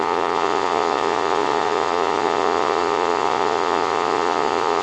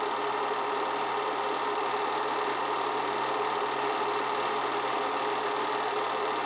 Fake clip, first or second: first